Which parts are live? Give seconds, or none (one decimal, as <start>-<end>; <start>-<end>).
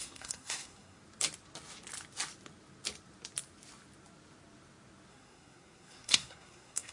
1.0-5.1